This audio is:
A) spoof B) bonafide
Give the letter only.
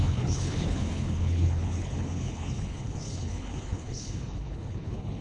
A